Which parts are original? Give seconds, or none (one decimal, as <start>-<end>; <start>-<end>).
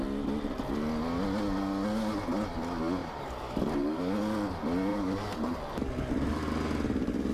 0.0-3.0; 4.0-4.9; 5.6-7.3